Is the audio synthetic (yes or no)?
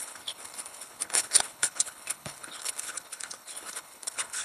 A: yes